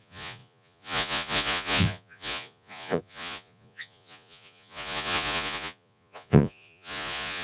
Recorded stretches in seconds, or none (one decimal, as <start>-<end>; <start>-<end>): none